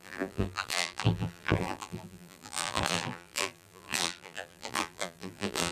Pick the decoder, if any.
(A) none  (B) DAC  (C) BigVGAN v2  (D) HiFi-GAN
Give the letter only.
C